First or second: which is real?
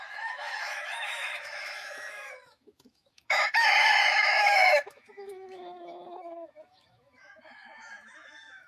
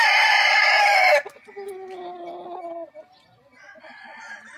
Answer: second